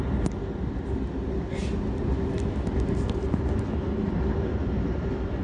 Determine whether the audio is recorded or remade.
recorded